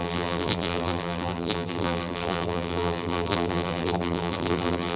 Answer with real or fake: fake